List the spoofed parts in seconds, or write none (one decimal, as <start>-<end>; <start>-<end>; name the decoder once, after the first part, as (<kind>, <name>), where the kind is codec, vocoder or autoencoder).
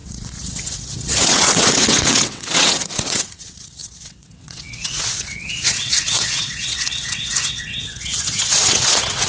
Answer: 0.0-9.3 (vocoder, WaveNeXt)